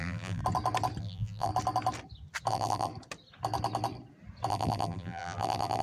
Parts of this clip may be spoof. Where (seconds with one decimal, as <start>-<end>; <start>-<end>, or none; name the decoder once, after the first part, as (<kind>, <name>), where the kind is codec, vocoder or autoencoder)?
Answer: 0.0-0.4 (vocoder, BigVGAN v2); 1.0-1.5; 2.5-2.9; 4.5-5.8